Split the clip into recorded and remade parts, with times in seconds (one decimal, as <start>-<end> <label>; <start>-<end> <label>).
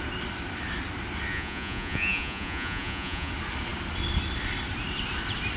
0.0-1.3 recorded; 1.3-3.3 remade; 3.3-5.6 recorded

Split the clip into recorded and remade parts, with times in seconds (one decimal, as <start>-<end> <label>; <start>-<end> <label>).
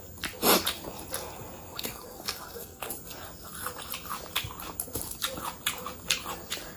0.0-1.7 recorded; 1.7-2.9 remade; 2.9-6.8 recorded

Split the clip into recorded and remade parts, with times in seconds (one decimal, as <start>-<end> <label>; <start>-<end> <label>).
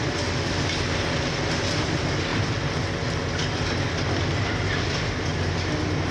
0.0-6.1 recorded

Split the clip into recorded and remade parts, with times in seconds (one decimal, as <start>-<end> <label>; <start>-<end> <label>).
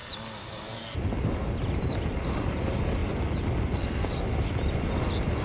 0.0-5.4 recorded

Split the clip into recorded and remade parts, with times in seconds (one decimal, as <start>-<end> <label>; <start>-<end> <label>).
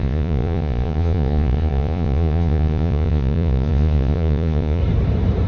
0.0-4.8 remade; 4.8-5.5 recorded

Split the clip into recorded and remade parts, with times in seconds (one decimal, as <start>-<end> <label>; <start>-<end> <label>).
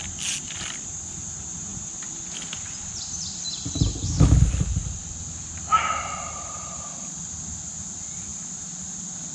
0.0-9.3 recorded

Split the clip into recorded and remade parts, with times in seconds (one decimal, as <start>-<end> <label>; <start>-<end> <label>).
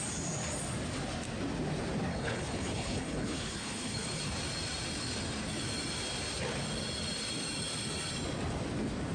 0.0-2.1 recorded; 2.1-4.2 remade; 4.2-9.1 recorded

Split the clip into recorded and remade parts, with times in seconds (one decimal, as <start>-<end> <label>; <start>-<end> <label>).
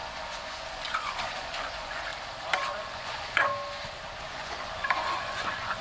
0.0-2.1 remade; 2.1-2.8 recorded; 2.8-3.5 remade; 3.5-4.2 recorded; 4.2-5.8 remade